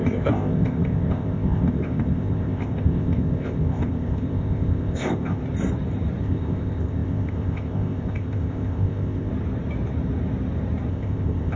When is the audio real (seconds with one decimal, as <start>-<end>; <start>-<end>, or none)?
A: 5.4-6.2; 9.3-10.9